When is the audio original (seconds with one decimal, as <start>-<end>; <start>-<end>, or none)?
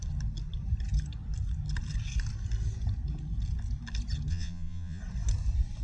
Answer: 0.0-4.3; 5.0-5.8